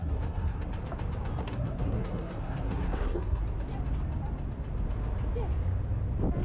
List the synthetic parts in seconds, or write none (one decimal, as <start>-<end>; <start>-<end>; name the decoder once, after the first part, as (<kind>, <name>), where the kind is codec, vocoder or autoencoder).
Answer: 0.0-0.7 (codec, SNAC); 1.4-3.4